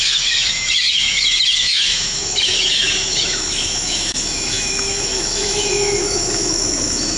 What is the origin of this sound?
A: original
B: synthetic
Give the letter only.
B